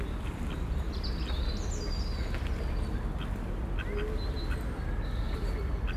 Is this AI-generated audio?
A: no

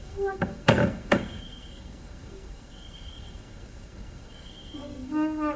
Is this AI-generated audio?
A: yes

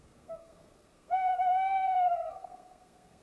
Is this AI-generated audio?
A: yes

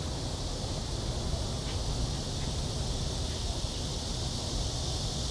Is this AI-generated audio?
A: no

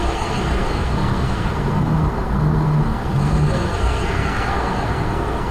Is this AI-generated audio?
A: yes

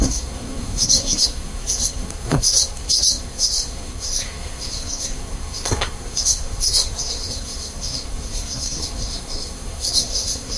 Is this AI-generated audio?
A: yes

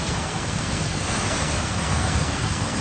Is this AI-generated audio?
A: yes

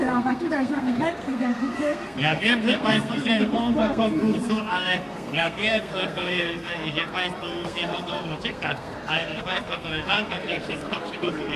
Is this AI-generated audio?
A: yes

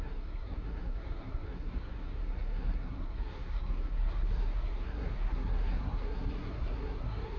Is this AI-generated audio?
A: yes